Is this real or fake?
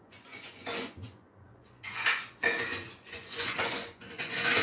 fake